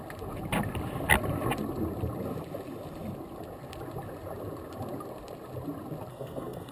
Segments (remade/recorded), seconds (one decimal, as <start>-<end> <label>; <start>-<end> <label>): 0.0-6.1 recorded; 6.1-6.7 remade